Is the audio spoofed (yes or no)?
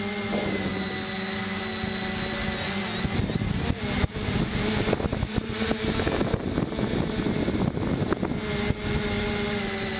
no